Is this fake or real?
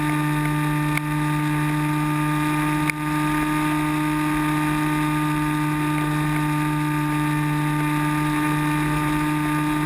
real